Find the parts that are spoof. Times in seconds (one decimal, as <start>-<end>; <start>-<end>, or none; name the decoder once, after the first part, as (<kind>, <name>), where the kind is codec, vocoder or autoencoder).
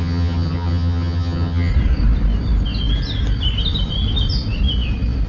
0.0-1.7 (vocoder, HiFi-GAN)